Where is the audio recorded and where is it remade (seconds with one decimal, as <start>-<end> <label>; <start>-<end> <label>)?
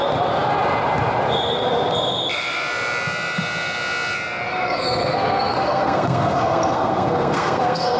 0.0-4.5 recorded; 4.5-8.0 remade